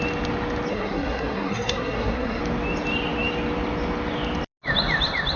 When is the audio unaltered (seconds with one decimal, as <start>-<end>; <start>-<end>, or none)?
0.0-0.7; 2.4-5.4